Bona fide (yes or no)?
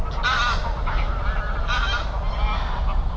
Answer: yes